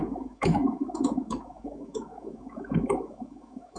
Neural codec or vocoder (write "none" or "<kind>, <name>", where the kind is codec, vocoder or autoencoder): autoencoder, DAC-VAE